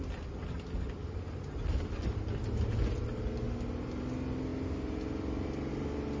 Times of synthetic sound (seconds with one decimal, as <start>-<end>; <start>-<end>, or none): none